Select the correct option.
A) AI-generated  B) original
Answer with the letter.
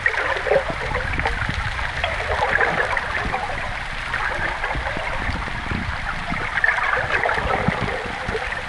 B